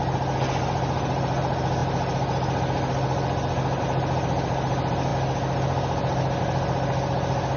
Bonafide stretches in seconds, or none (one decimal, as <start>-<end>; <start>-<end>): 0.0-7.6